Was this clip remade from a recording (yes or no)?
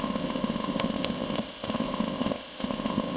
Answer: yes